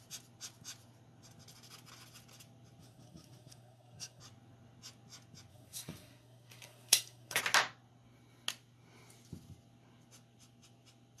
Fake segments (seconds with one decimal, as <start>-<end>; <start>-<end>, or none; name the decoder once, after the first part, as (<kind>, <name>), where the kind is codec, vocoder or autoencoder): 2.8-4.2 (codec, SNAC); 5.5-7.4